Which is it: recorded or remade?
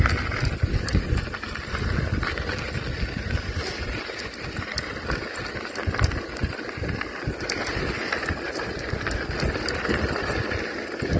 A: recorded